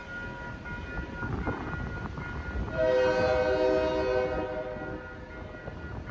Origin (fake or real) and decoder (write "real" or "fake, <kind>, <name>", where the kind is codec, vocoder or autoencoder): real